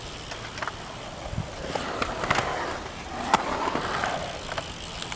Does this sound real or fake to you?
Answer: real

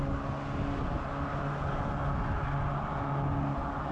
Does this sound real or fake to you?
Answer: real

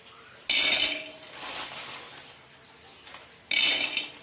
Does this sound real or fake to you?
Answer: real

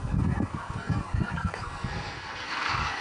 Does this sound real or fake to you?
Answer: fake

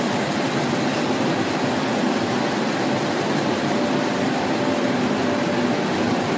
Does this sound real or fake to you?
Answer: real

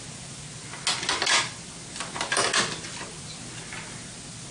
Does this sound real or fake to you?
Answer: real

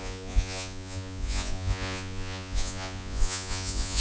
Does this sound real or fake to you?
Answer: fake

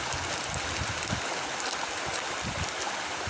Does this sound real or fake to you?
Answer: real